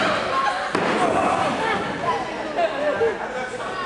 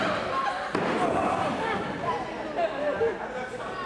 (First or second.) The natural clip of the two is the first